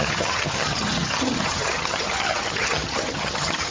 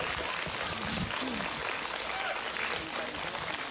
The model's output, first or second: first